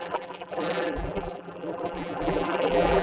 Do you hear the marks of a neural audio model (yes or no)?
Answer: yes